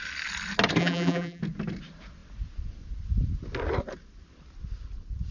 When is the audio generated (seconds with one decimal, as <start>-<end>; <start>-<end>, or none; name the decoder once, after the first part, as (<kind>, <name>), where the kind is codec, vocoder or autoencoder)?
0.8-1.4 (vocoder, BigVGAN v2)